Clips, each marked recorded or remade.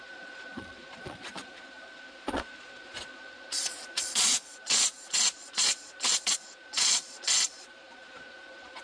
remade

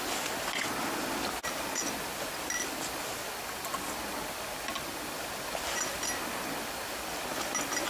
recorded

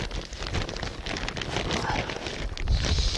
recorded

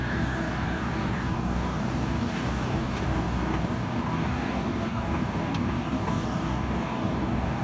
remade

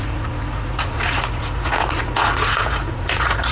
remade